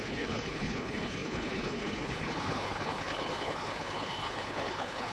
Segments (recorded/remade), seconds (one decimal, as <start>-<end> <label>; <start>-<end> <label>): 0.0-5.1 remade